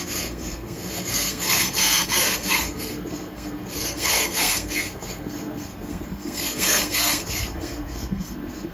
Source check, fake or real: fake